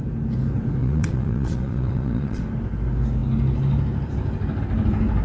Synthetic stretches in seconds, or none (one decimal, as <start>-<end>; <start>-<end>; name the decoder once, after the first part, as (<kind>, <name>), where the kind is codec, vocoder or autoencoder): 0.8-2.4 (vocoder, Vocos)